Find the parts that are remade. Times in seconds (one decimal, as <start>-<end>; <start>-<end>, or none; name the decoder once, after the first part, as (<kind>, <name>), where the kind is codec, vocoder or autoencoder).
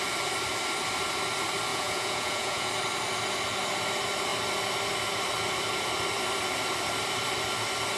1.7-2.7 (vocoder, Vocos)